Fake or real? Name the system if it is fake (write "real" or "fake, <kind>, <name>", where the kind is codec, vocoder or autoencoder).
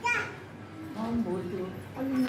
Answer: real